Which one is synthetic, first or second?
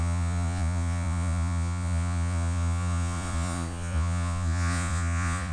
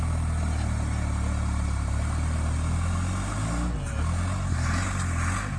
first